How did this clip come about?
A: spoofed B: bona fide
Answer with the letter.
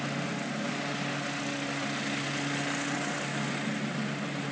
B